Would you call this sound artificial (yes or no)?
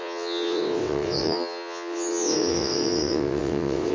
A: yes